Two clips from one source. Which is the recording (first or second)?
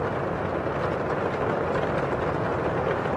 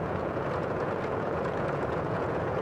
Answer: first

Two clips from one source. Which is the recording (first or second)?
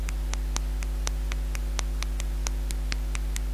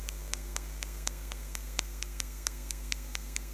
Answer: first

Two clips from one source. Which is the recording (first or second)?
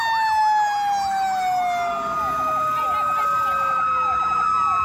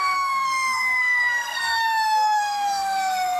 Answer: first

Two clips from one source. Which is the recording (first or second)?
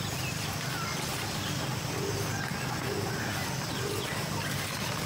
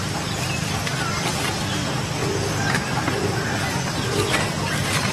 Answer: first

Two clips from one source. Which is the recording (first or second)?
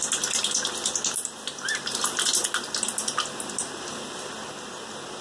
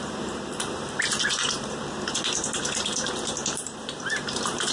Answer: first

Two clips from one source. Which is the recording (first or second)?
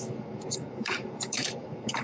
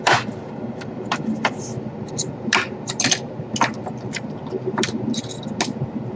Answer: second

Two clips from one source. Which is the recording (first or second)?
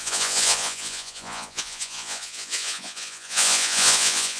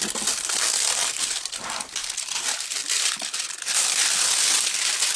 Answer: second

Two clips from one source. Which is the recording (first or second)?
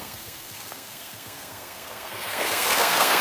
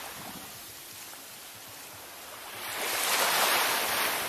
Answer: second